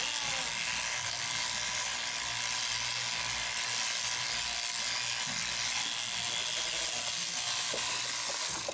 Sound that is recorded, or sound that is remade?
recorded